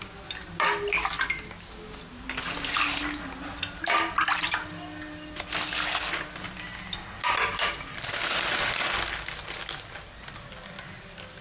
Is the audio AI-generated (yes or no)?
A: no